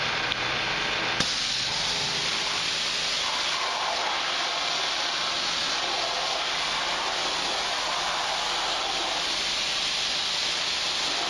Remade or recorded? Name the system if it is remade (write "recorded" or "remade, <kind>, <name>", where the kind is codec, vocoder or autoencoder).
recorded